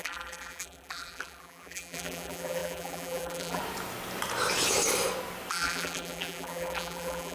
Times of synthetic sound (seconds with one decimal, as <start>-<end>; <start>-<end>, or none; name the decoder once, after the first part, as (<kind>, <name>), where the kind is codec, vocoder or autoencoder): 0.0-3.6 (vocoder, BigVGAN v2); 5.5-7.3